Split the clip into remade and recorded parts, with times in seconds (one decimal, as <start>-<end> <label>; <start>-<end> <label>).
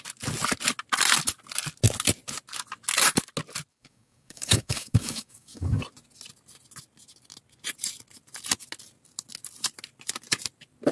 0.0-3.7 recorded; 3.7-5.8 remade; 5.8-10.9 recorded